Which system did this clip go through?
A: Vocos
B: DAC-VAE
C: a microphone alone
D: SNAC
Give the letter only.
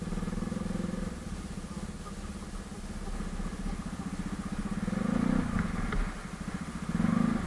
C